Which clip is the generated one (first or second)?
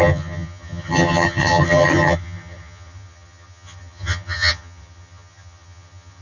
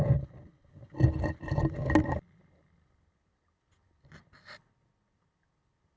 first